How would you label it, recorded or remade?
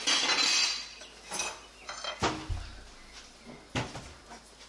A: recorded